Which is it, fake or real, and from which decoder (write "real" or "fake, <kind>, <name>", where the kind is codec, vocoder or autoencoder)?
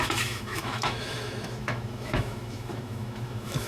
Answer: fake, autoencoder, DAC-VAE